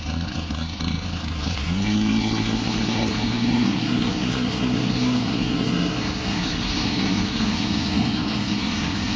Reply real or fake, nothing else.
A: fake